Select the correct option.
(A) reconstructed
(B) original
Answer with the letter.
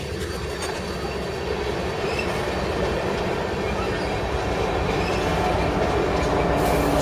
B